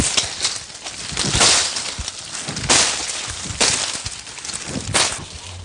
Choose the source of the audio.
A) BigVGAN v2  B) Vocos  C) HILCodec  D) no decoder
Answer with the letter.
D